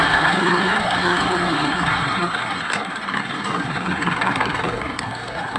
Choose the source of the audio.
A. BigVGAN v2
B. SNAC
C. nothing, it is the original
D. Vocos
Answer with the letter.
B